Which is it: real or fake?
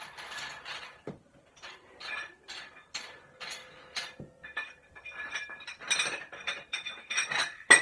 real